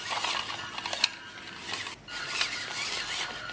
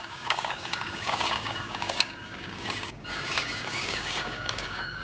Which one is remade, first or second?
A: second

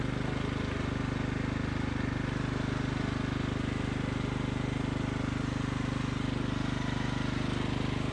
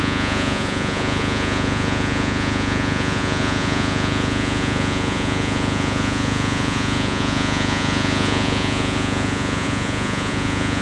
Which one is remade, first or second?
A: second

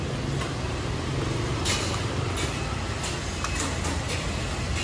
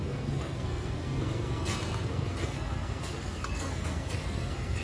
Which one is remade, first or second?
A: second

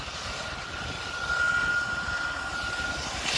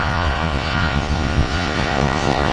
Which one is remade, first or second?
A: second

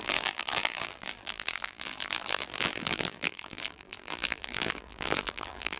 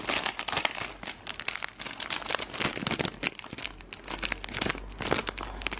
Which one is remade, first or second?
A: first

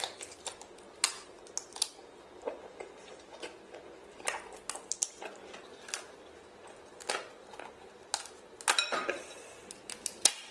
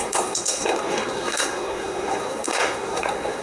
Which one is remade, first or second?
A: second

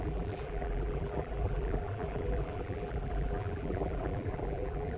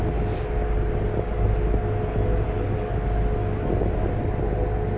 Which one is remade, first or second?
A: first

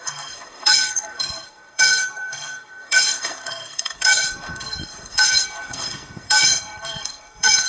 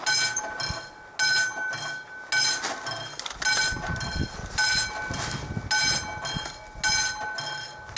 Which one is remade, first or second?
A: first